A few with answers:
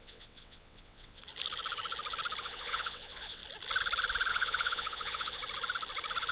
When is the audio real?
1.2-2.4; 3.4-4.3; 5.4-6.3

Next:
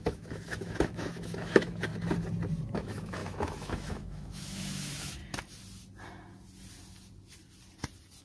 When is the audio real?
1.9-2.7; 5.2-8.2

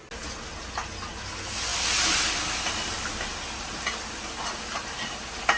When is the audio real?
0.0-5.6

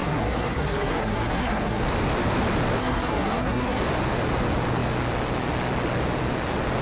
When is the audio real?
1.8-2.8; 3.8-6.8